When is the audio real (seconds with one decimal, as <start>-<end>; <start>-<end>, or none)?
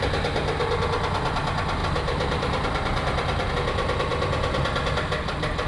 0.0-1.8; 3.5-4.1; 4.9-5.7